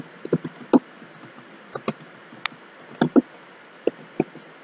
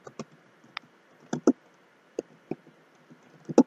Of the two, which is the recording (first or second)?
second